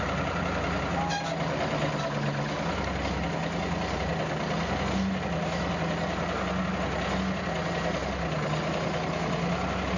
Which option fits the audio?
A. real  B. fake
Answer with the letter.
A